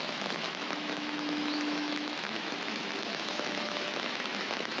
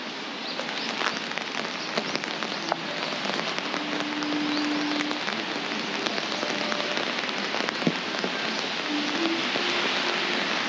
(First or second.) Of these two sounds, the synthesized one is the first